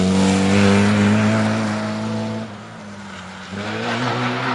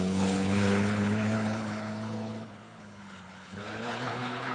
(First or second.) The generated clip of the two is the second